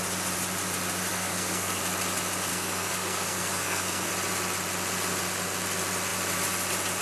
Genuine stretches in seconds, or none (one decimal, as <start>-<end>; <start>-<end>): 0.0-1.1; 1.8-2.5; 4.1-7.0